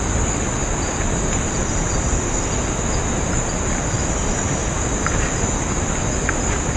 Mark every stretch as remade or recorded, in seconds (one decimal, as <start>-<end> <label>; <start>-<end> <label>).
0.0-6.8 recorded